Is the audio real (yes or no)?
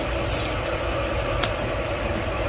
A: yes